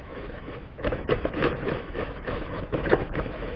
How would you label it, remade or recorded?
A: remade